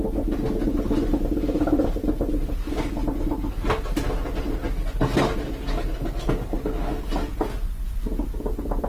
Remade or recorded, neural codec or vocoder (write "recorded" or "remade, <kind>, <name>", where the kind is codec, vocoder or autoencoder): recorded